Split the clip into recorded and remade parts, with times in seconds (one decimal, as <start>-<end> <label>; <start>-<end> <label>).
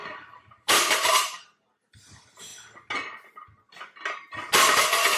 0.0-1.3 remade; 1.3-5.2 recorded